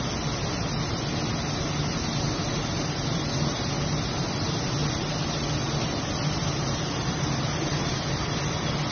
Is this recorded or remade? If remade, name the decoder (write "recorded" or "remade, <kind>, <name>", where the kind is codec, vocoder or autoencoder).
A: recorded